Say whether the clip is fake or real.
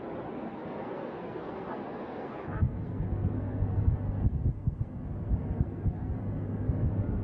fake